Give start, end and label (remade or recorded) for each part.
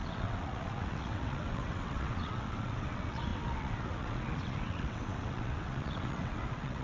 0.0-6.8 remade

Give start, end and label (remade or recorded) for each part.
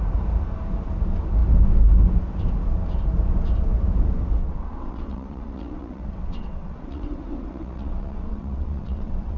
0.0-4.4 recorded; 4.4-9.4 remade